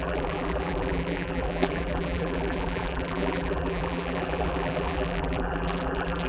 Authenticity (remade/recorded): remade